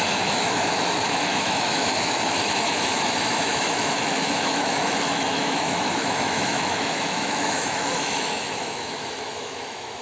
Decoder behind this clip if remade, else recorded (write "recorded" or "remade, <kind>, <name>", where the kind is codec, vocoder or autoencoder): remade, autoencoder, DAC-VAE